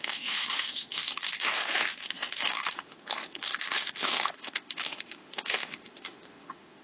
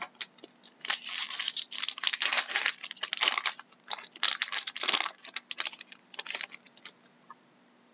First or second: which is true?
second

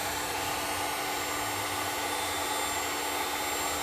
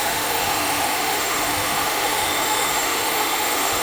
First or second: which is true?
first